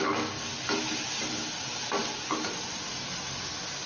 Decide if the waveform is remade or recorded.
recorded